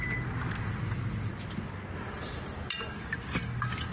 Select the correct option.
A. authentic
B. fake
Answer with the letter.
A